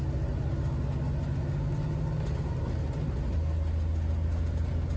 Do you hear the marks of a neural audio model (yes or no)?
no